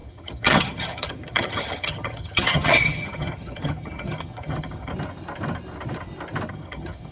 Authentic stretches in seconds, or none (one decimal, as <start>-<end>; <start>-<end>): 4.9-6.5